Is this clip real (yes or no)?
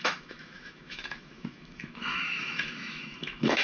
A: no